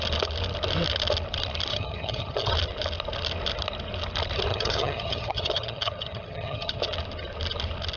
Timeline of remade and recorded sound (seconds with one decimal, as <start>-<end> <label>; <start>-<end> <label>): 0.0-1.7 recorded; 1.7-2.5 remade; 2.5-4.5 recorded; 4.5-6.8 remade; 6.8-8.0 recorded